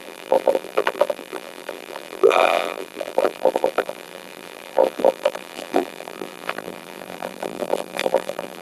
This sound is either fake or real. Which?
fake